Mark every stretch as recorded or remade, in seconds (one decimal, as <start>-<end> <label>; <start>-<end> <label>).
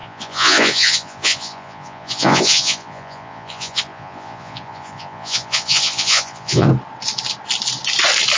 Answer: 0.0-6.7 remade; 6.7-8.4 recorded